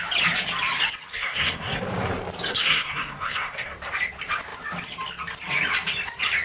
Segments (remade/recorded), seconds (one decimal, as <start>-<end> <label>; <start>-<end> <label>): 0.0-1.1 recorded; 1.1-1.8 remade; 1.8-2.5 recorded; 2.5-3.7 remade; 3.7-6.4 recorded